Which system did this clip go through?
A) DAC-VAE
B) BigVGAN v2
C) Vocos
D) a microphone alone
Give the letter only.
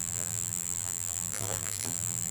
B